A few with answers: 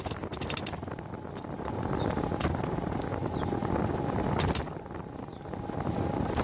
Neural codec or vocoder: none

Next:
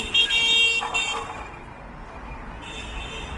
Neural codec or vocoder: none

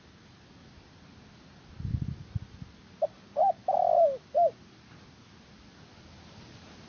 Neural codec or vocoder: none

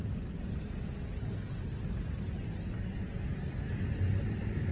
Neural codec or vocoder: none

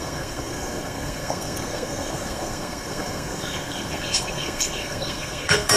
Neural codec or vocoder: codec, SNAC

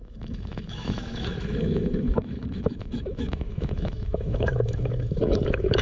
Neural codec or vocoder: autoencoder, DAC-VAE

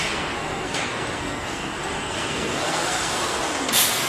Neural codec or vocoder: codec, SNAC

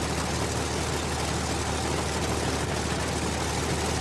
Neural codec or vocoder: none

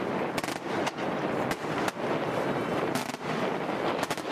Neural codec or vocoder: vocoder, BigVGAN v2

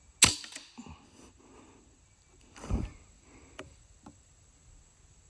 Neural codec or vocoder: none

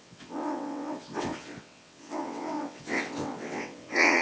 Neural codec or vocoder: vocoder, WaveNeXt